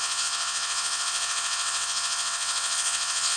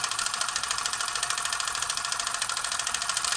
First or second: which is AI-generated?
first